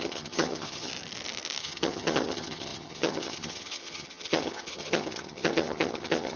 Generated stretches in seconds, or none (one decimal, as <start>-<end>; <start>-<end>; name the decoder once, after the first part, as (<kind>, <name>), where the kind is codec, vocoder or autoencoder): 0.0-0.9 (vocoder, HiFi-GAN); 1.6-6.4